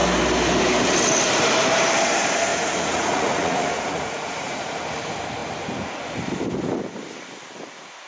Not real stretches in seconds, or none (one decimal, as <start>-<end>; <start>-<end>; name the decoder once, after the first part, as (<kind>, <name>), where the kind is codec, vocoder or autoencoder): 2.5-4.7 (vocoder, Vocos)